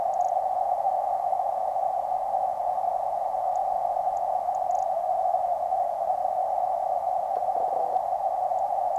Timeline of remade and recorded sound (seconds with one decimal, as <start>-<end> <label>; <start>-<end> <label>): 0.0-9.0 remade